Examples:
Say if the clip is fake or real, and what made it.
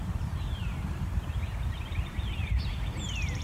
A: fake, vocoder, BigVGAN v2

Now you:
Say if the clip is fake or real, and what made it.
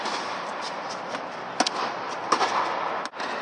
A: real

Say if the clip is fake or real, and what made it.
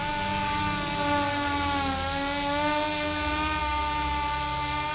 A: real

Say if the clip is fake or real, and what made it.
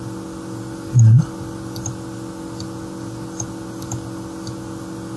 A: real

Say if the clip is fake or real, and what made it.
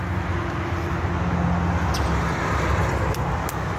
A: real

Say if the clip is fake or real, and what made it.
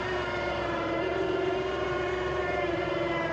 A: fake, vocoder, BigVGAN v2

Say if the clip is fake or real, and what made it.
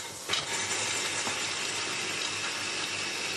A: real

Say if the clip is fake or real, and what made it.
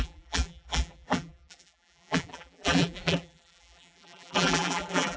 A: fake, vocoder, BigVGAN v2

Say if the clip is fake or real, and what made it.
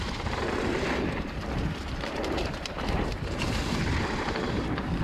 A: fake, vocoder, BigVGAN v2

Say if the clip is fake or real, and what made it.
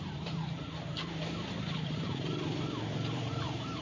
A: fake, vocoder, BigVGAN v2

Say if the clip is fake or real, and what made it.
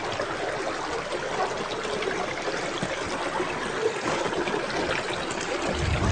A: real